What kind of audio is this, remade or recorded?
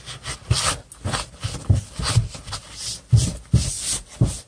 recorded